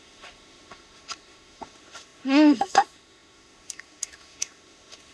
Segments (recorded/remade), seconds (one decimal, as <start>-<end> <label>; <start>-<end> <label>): 0.0-5.1 remade